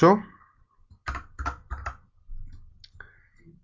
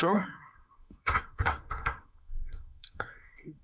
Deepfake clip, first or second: second